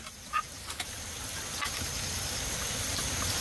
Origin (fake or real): real